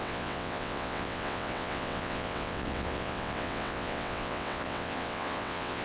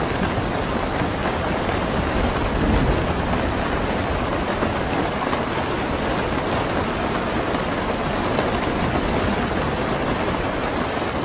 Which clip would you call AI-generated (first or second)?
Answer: first